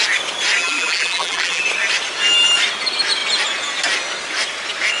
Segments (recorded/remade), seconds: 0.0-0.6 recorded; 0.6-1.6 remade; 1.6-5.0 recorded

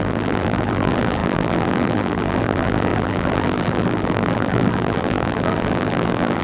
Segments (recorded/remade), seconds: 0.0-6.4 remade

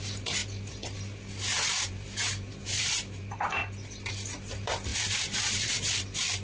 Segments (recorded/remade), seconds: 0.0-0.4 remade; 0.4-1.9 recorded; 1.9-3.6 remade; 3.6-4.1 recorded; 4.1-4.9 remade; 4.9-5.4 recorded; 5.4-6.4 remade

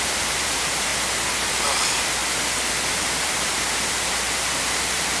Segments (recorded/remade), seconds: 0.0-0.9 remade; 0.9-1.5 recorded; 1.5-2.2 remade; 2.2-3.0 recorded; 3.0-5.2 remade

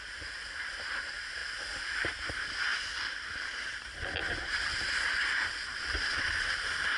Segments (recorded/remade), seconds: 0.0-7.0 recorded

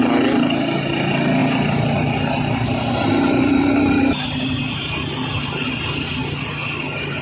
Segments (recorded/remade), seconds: 0.0-1.4 recorded; 1.4-5.7 remade; 5.7-7.2 recorded

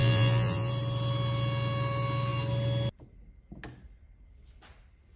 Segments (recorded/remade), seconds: 0.0-0.7 remade; 0.7-5.2 recorded